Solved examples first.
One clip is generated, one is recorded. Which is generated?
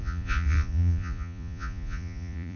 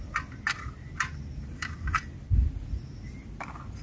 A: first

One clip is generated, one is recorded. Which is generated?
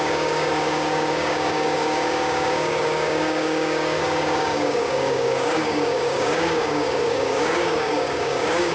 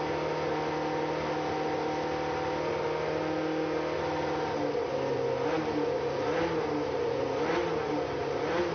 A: first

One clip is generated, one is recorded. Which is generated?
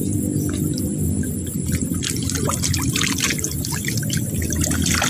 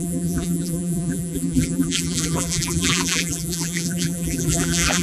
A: second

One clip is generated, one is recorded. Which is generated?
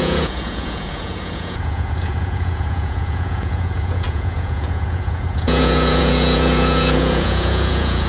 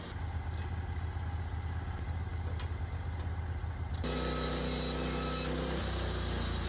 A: first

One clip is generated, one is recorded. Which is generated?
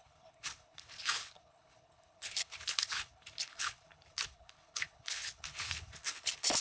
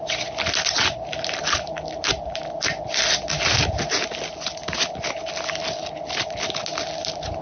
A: first